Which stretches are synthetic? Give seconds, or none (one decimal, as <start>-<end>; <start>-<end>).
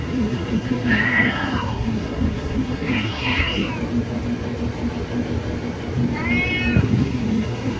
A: 0.0-3.7; 6.8-7.8